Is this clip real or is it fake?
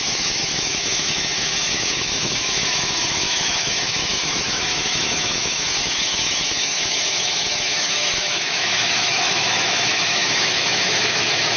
fake